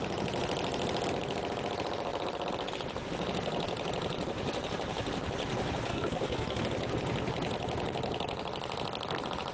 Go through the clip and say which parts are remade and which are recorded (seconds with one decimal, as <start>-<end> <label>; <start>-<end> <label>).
0.0-5.9 recorded; 5.9-6.6 remade; 6.6-9.5 recorded